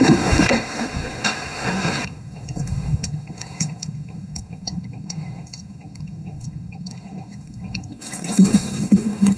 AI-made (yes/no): yes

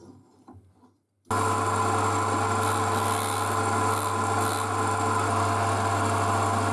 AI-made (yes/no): no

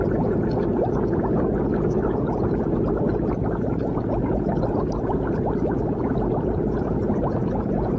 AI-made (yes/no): no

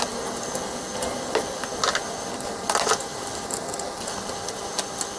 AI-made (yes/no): no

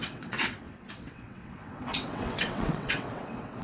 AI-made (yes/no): yes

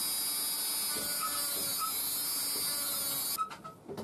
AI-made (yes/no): no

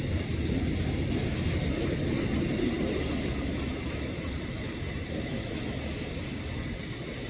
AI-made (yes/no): no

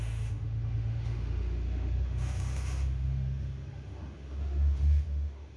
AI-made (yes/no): yes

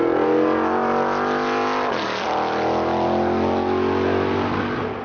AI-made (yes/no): no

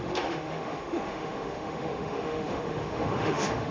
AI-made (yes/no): yes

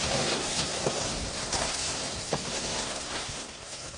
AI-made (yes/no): yes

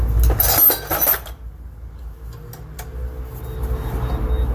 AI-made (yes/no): no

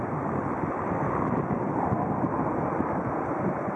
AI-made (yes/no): yes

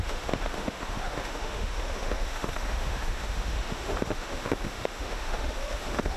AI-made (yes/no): yes